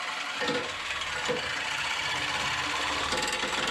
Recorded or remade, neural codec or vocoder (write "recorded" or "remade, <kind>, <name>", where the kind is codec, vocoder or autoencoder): recorded